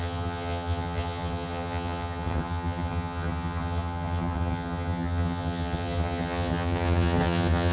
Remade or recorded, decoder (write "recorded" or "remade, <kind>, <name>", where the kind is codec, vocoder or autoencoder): remade, vocoder, HiFi-GAN